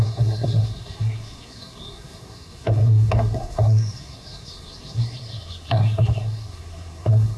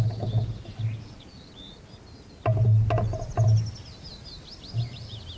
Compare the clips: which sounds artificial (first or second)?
first